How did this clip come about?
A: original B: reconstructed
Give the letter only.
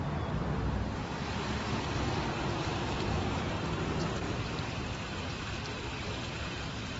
B